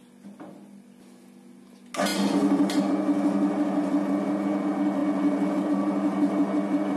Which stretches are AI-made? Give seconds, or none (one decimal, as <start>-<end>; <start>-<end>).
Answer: none